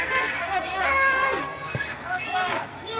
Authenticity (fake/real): fake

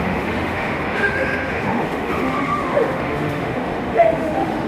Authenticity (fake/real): fake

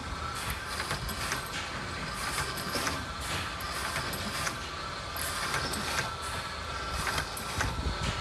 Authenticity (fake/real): real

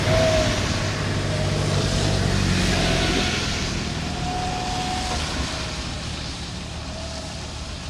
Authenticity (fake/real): real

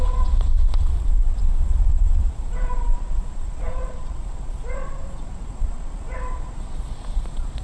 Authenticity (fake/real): fake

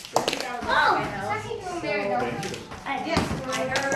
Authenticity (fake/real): real